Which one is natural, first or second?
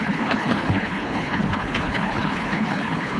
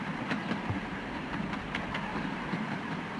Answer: second